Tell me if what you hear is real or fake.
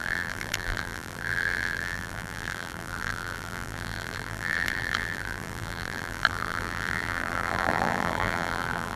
fake